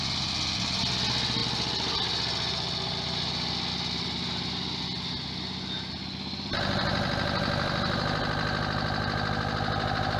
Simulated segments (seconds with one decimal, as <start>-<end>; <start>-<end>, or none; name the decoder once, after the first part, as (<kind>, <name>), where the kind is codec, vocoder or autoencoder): none